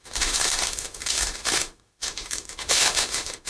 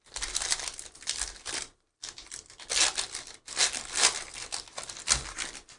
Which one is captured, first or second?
second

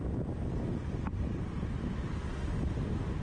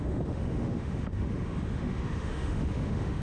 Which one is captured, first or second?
first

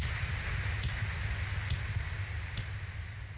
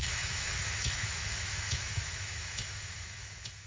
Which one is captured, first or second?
first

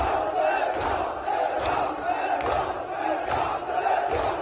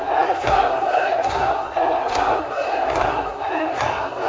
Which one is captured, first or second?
first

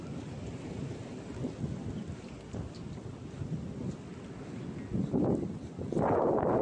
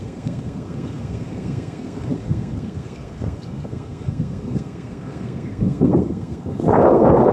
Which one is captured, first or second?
first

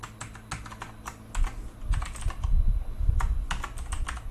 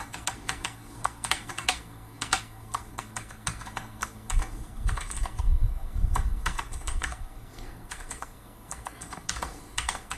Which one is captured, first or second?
first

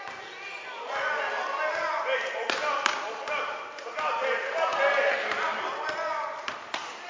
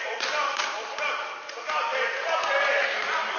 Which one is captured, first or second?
first